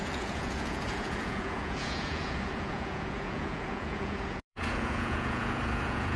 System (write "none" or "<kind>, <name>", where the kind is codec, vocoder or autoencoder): vocoder, Vocos